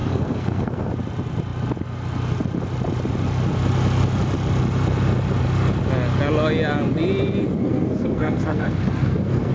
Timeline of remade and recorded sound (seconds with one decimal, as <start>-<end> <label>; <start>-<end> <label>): 0.0-0.9 remade; 0.9-7.6 recorded; 7.6-9.5 remade